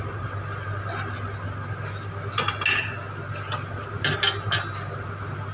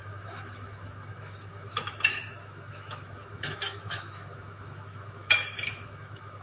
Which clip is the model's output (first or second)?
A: second